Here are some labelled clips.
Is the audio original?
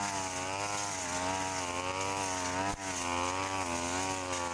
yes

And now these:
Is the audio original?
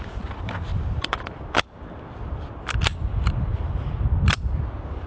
no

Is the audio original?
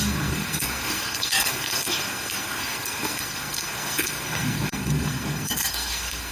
no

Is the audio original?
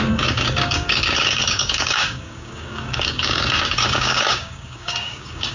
no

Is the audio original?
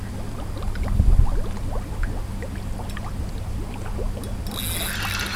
yes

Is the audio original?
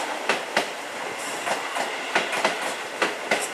yes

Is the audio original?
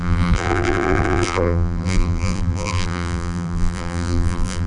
no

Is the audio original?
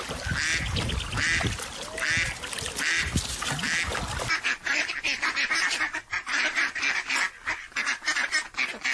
yes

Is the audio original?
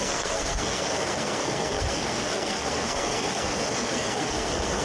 no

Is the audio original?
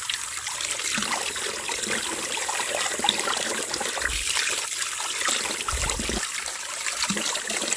yes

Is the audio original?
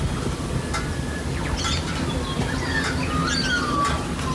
yes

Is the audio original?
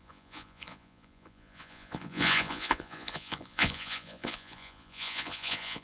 no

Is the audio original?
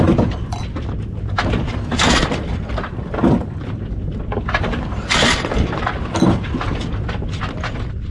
yes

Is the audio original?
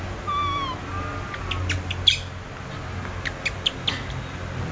yes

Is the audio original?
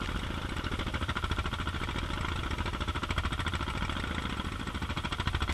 yes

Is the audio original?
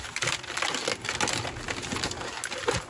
yes